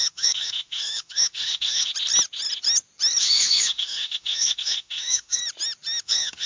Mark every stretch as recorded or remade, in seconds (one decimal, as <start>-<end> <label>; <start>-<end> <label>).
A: 0.0-1.9 remade; 1.9-3.2 recorded; 3.2-5.4 remade; 5.4-6.0 recorded; 6.0-6.5 remade